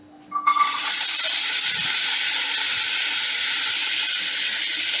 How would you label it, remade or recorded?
recorded